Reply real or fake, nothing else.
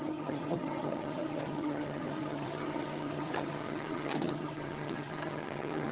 fake